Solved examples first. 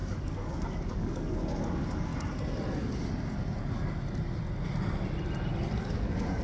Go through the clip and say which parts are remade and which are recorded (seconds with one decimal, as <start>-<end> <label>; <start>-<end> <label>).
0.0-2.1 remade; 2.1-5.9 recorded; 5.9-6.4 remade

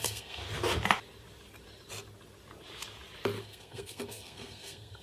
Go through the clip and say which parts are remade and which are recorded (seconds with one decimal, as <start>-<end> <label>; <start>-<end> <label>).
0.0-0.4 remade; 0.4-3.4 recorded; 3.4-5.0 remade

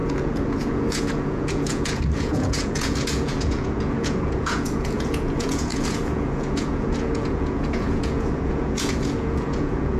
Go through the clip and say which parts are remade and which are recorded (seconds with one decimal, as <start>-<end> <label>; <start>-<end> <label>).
0.0-10.0 remade

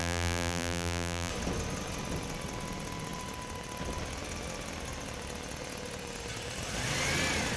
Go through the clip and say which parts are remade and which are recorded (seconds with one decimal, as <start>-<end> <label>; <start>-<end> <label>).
0.0-1.3 remade; 1.3-7.6 recorded

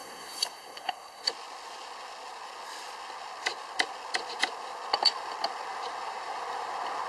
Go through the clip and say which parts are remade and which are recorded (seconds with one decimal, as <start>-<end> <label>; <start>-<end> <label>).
0.0-1.3 remade; 1.3-7.1 recorded

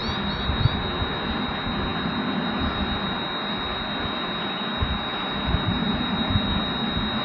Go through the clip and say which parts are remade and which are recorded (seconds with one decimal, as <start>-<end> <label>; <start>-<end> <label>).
0.0-7.2 recorded